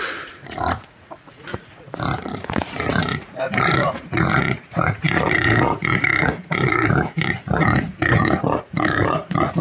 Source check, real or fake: fake